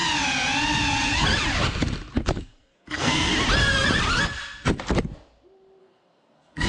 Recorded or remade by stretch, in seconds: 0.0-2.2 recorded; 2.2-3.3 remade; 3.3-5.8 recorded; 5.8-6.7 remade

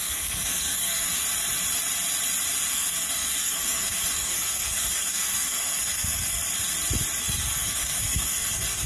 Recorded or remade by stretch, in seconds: 0.0-1.1 remade; 1.1-2.7 recorded; 2.7-6.4 remade; 6.4-7.2 recorded; 7.2-8.9 remade

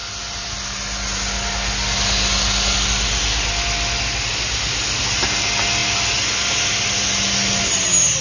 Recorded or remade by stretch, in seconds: 0.0-8.2 recorded

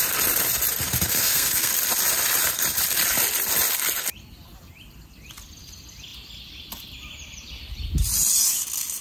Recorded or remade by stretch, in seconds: 0.0-1.1 recorded; 1.1-1.7 remade; 1.7-9.0 recorded

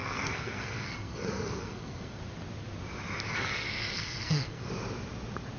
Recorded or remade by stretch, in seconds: 0.0-2.2 remade; 2.2-3.3 recorded; 3.3-4.7 remade; 4.7-5.6 recorded